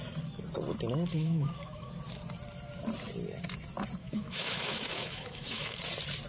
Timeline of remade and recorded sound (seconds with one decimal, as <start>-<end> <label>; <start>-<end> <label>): 0.0-1.1 recorded; 1.1-1.9 remade; 1.9-4.0 recorded; 4.0-5.8 remade; 5.8-6.3 recorded

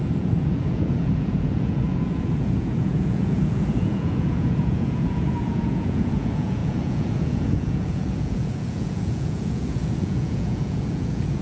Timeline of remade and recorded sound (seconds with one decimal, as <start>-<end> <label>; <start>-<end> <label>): 0.0-11.4 remade

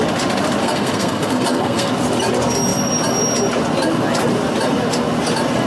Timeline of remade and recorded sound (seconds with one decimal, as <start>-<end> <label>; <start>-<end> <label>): 0.0-0.6 recorded; 0.6-1.9 remade; 1.9-5.7 recorded

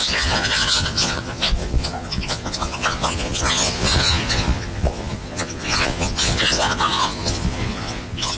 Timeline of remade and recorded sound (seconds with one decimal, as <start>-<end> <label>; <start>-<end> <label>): 0.0-8.4 remade

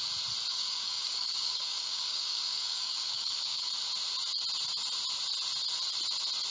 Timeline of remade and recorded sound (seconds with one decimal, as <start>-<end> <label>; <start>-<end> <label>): 0.0-0.5 recorded; 0.5-3.7 remade; 3.7-6.5 recorded

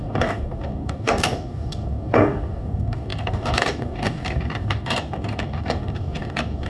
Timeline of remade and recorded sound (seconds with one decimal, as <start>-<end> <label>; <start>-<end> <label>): 0.0-6.7 remade

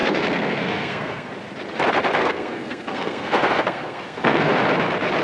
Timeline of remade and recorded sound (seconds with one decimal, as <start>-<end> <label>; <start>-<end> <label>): 0.0-1.3 remade; 1.3-2.2 recorded; 2.2-4.5 remade; 4.5-5.2 recorded

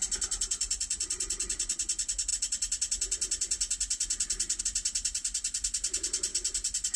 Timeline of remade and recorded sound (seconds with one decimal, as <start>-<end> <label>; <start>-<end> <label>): 0.0-7.0 recorded